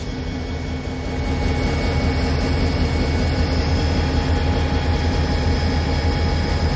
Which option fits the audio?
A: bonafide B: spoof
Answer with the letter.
A